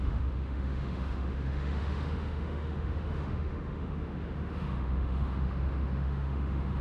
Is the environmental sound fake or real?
fake